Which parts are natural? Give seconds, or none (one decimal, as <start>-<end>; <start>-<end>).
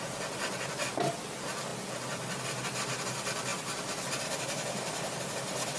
0.0-3.5; 4.9-5.8